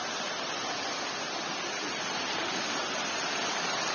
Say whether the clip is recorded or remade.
recorded